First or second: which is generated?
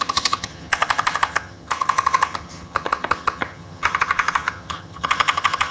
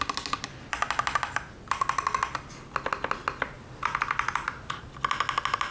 first